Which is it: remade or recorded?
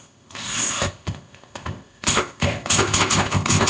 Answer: remade